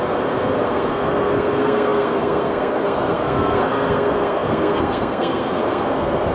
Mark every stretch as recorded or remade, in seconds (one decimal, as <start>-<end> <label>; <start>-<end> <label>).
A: 0.0-6.3 remade